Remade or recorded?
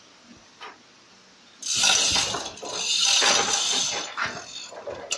recorded